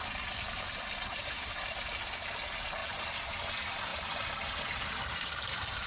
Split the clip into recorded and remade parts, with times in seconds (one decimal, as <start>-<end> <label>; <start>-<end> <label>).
0.0-1.1 recorded; 1.1-1.6 remade; 1.6-2.8 recorded; 2.8-3.5 remade; 3.5-3.9 recorded; 3.9-5.9 remade